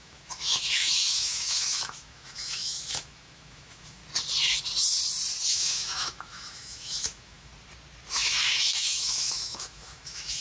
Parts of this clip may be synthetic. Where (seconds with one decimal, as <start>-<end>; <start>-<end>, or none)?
0.0-4.0; 5.5-7.5; 8.1-10.4